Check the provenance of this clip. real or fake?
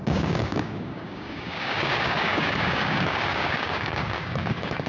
fake